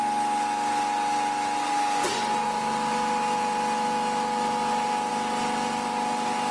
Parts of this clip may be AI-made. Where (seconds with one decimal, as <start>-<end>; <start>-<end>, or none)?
none